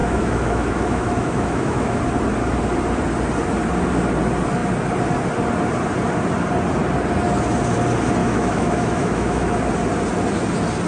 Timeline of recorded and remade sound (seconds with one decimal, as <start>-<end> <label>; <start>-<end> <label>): 0.0-2.0 remade; 2.0-8.2 recorded; 8.2-9.7 remade; 9.7-10.9 recorded